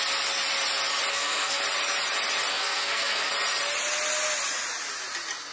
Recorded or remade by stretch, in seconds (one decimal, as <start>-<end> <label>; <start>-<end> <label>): 0.0-1.1 recorded; 1.1-1.6 remade; 1.6-2.5 recorded; 2.5-3.3 remade; 3.3-5.5 recorded